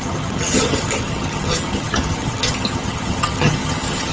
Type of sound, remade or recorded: remade